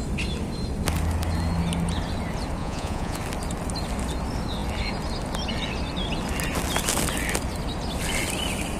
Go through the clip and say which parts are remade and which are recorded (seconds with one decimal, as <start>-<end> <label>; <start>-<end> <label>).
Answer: 0.0-2.6 recorded; 2.6-3.2 remade; 3.2-8.8 recorded